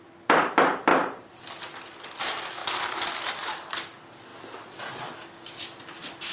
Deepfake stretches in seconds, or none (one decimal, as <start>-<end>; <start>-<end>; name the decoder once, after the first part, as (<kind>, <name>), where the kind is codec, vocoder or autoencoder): 0.9-1.4 (vocoder, BigVGAN v2); 2.6-3.7